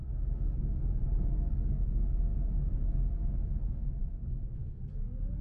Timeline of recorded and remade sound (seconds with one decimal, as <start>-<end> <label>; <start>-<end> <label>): 0.0-5.4 remade